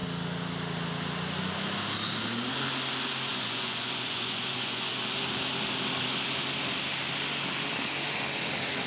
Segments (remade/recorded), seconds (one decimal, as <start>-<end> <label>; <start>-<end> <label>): 0.0-3.3 recorded; 3.3-4.9 remade; 4.9-8.9 recorded